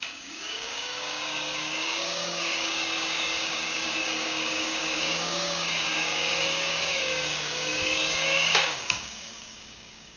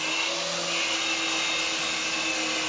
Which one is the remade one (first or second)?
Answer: first